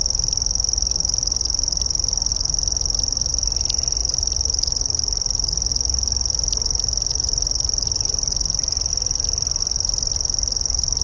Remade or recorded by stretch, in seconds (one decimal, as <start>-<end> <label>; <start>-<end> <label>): 0.0-11.0 recorded